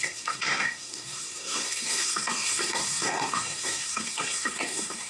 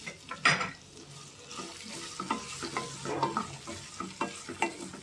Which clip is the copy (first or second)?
first